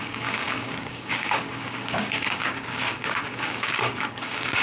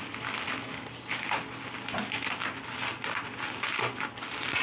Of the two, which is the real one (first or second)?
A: second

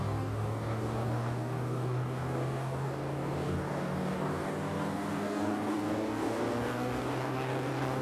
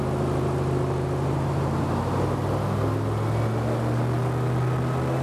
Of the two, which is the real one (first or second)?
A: second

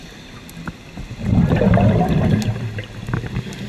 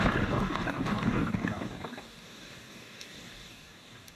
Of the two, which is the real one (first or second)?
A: first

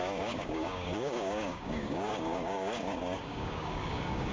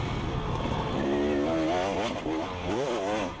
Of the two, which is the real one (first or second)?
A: second